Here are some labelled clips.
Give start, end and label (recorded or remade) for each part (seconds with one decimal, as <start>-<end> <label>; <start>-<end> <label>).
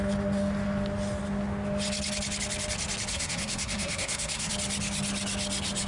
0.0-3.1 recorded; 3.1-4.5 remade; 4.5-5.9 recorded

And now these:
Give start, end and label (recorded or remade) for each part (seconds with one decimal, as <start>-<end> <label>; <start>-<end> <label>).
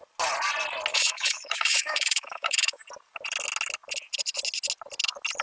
0.0-0.9 recorded; 0.9-2.8 remade; 2.8-5.4 recorded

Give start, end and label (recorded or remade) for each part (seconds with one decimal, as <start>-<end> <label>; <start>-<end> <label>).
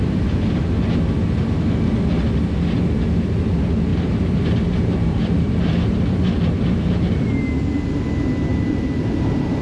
0.0-3.9 recorded; 3.9-7.3 remade; 7.3-8.5 recorded; 8.5-9.1 remade; 9.1-9.6 recorded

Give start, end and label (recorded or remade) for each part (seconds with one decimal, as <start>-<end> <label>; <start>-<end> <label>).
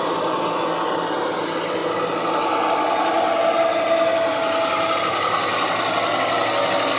0.0-7.0 recorded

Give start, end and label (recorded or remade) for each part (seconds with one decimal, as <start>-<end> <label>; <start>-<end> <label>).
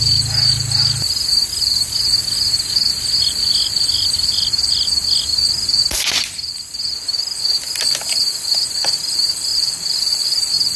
0.0-9.5 recorded; 9.5-10.2 remade; 10.2-10.8 recorded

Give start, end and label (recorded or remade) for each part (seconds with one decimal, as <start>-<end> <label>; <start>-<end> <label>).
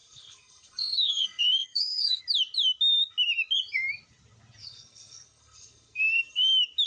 0.0-2.2 remade; 2.2-4.6 recorded; 4.6-6.5 remade; 6.5-6.9 recorded